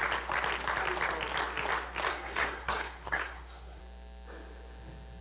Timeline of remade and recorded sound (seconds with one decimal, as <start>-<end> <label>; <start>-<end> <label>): 0.0-2.1 recorded; 2.1-3.8 remade; 3.8-5.2 recorded